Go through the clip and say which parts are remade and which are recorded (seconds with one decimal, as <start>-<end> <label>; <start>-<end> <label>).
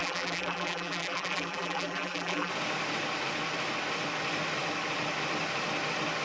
0.0-2.5 remade; 2.5-6.2 recorded